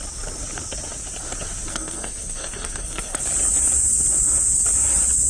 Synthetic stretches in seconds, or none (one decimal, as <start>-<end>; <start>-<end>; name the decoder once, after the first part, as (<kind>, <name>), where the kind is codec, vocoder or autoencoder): 1.7-3.2 (codec, SNAC)

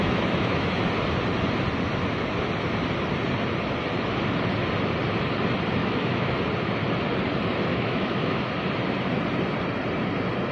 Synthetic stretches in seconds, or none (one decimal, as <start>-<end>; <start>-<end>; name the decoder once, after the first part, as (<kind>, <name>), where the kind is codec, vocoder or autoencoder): 0.0-0.8 (autoencoder, DAC-VAE); 5.8-6.4; 7.7-8.5